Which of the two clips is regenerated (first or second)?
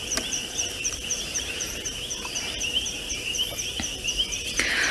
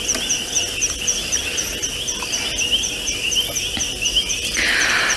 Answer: first